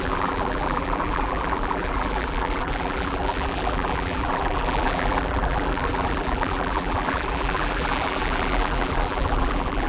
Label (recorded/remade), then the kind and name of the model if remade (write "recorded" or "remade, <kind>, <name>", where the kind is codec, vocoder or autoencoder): remade, vocoder, BigVGAN v2